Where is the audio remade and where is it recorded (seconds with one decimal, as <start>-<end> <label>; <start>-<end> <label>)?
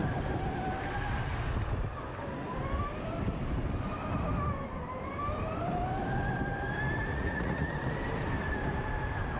0.0-7.1 recorded; 7.1-7.7 remade; 7.7-9.4 recorded